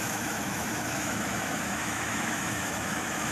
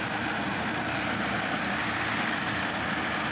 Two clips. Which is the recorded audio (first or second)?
second